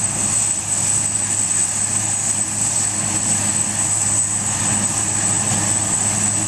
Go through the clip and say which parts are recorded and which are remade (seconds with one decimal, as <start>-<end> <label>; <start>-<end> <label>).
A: 0.0-6.5 recorded